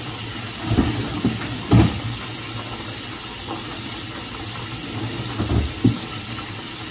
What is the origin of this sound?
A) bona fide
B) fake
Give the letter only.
A